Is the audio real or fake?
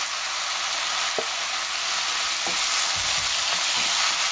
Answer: real